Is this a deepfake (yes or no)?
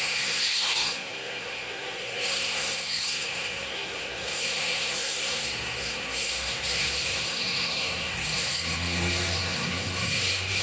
yes